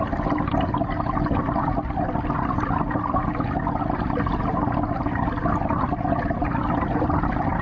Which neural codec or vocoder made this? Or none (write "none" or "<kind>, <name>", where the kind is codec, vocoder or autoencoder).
none